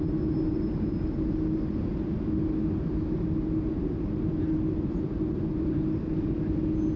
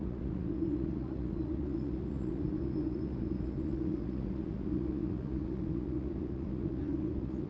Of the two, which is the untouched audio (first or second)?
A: first